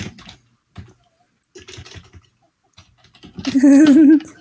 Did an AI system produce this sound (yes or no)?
no